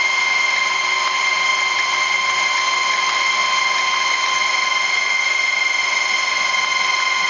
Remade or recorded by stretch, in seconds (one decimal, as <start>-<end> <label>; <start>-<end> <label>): 0.0-7.3 recorded